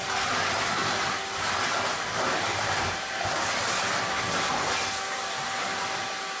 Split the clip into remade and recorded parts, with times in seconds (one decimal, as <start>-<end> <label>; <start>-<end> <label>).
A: 0.0-6.4 recorded